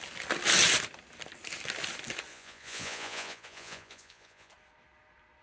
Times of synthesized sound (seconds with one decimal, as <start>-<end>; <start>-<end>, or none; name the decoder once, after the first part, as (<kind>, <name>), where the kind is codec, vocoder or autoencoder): 2.3-4.5 (vocoder, Vocos)